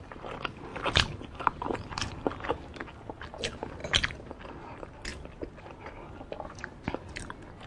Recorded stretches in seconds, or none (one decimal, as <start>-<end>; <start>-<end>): 0.0-0.7; 2.5-3.8; 4.4-7.7